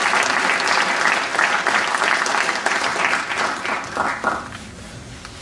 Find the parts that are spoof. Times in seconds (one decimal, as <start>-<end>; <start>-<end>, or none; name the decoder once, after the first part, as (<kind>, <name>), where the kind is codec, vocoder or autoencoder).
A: none